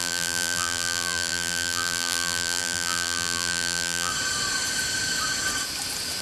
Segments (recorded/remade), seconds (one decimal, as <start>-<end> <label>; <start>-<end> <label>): 0.0-4.1 remade; 4.1-6.2 recorded